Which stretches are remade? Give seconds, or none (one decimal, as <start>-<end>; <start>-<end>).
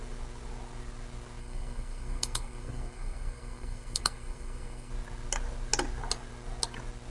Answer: 1.4-4.9